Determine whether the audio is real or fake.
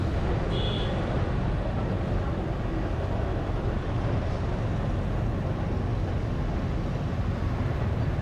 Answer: real